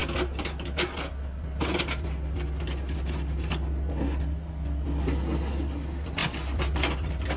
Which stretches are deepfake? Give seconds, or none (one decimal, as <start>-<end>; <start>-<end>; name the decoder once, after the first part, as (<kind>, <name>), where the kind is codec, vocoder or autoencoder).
none